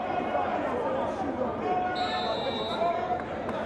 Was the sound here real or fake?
real